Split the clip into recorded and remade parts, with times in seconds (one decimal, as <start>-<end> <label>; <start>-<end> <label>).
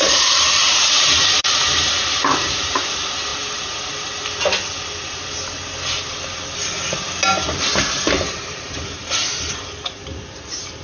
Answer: 0.0-3.3 remade; 3.3-8.3 recorded; 8.3-10.8 remade